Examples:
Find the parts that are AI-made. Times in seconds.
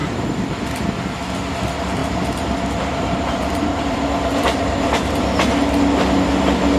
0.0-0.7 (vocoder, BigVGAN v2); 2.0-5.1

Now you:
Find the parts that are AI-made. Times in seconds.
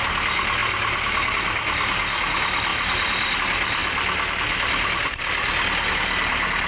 3.8-5.9 (vocoder, BigVGAN v2)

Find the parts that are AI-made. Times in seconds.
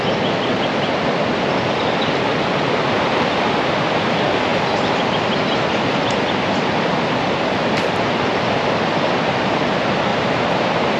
10.1-11.0 (vocoder, BigVGAN v2)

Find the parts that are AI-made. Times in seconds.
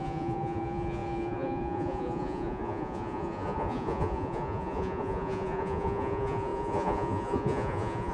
0.0-8.1 (vocoder, Vocos)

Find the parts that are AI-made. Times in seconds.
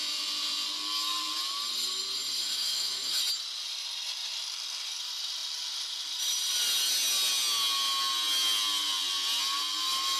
2.4-3.2 (autoencoder, DAC-VAE)